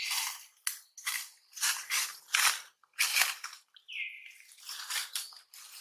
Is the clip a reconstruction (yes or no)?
no